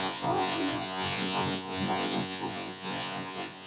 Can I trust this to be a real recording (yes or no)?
no